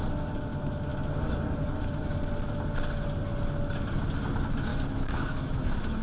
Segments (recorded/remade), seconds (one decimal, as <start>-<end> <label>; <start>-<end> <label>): 0.0-4.7 recorded; 4.7-6.0 remade

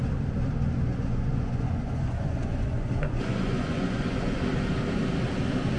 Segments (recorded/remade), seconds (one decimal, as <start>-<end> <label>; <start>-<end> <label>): 0.0-0.9 recorded; 0.9-4.4 remade; 4.4-5.8 recorded

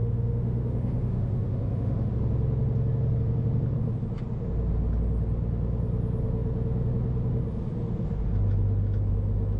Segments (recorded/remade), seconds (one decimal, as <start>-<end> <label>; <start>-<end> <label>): 0.0-2.1 remade; 2.1-9.6 recorded

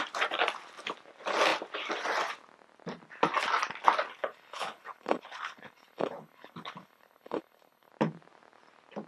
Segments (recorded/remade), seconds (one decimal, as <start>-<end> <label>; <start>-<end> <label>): 0.0-4.1 recorded; 4.1-7.9 remade; 7.9-9.1 recorded

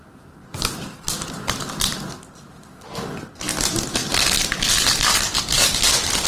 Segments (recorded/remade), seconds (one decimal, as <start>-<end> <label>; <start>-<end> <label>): 0.0-6.3 recorded

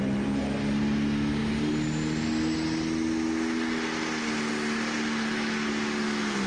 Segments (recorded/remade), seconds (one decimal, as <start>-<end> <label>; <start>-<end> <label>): 0.0-6.5 recorded